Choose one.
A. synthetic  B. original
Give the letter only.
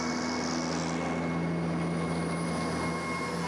B